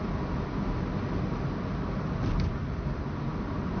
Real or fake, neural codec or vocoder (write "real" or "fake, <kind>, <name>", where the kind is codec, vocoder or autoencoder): real